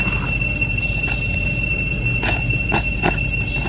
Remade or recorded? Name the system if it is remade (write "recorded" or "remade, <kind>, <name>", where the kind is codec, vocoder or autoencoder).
recorded